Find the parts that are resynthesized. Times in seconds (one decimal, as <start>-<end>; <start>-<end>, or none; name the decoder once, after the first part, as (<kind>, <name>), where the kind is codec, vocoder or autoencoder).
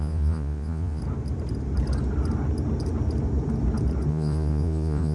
0.0-1.0 (vocoder, Vocos); 4.1-5.1